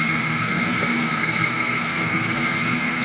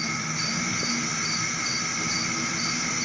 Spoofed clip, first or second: first